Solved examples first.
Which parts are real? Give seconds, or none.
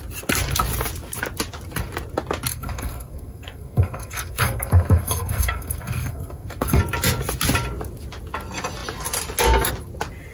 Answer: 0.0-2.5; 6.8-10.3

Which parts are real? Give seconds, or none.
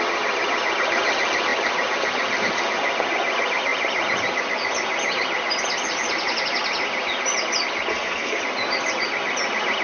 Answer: 0.0-7.9; 8.4-9.8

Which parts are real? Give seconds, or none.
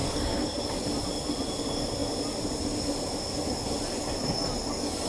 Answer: 0.6-5.1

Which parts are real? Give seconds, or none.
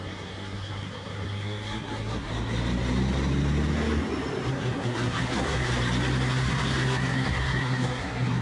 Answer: 2.3-4.5; 5.7-6.3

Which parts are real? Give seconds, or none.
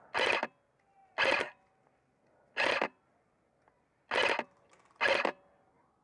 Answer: 0.0-6.0